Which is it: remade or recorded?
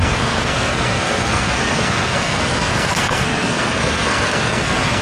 remade